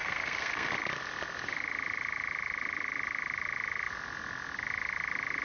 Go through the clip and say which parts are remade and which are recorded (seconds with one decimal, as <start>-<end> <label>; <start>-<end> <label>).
0.0-0.7 remade; 0.7-5.4 recorded